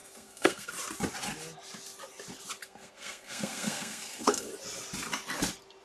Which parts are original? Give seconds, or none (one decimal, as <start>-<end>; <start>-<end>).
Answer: 0.7-2.6; 4.5-5.8